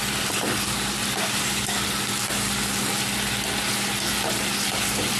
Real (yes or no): yes